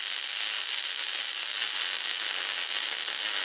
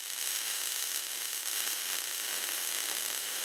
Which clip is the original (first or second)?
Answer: first